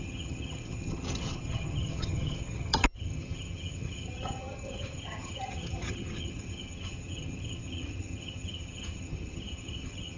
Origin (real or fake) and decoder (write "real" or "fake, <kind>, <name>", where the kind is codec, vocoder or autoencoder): fake, vocoder, HiFi-GAN